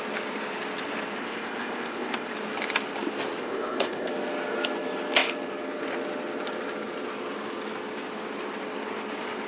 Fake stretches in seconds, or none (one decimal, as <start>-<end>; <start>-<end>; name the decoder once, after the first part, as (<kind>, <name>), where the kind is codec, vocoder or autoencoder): 1.2-2.3 (codec, ZipCodec); 3.4-4.1